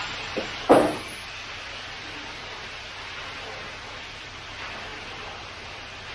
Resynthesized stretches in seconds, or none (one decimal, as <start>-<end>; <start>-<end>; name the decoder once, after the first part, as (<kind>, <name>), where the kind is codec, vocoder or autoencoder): none